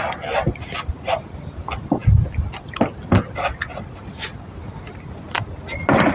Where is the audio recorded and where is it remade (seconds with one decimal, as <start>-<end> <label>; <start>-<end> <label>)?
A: 0.0-6.1 recorded